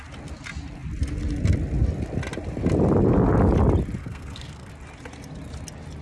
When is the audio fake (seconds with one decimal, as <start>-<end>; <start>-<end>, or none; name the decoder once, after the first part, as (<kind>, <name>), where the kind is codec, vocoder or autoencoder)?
4.0-4.7 (codec, SNAC)